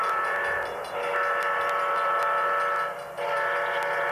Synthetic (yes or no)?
no